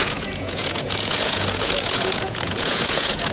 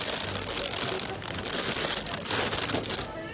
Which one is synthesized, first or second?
first